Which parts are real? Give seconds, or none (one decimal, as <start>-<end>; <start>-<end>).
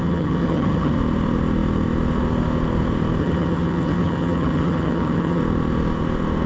0.9-3.2; 5.4-6.5